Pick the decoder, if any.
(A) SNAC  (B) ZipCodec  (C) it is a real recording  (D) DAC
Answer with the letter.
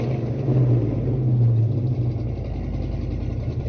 C